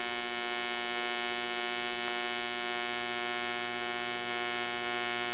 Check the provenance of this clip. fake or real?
real